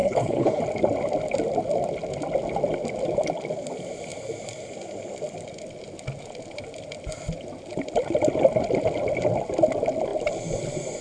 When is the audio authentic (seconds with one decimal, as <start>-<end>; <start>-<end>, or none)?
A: 0.6-11.0